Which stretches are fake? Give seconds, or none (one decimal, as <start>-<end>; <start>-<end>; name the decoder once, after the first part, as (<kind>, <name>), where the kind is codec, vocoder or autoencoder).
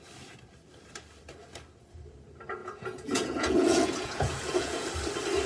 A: 2.6-4.9 (vocoder, Vocos)